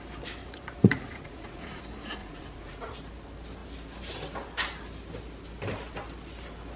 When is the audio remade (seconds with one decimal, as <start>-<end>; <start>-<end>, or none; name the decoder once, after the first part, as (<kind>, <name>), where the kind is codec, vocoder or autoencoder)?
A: 0.4-1.8 (vocoder, Vocos); 2.2-3.0